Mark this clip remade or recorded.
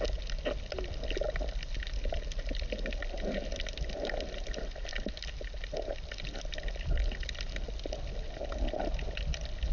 recorded